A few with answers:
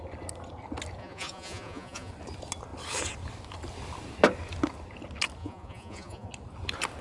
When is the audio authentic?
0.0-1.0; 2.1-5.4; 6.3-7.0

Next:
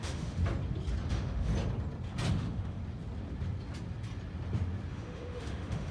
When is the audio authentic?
0.4-1.1; 1.5-2.3; 2.8-4.9

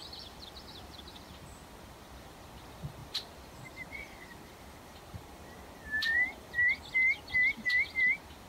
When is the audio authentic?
none

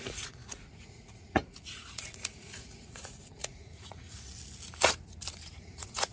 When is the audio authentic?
4.3-5.5